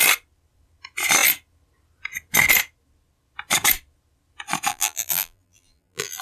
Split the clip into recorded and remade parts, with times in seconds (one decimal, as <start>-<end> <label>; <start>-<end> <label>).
0.0-4.7 recorded; 4.7-6.2 remade